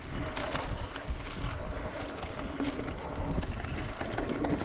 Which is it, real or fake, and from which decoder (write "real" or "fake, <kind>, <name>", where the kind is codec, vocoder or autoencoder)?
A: real